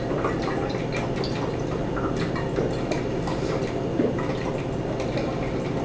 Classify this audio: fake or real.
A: real